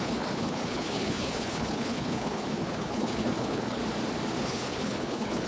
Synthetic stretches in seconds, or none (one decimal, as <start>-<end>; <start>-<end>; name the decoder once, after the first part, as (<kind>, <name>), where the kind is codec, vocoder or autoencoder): 0.0-3.8 (codec, HILCodec); 4.4-5.5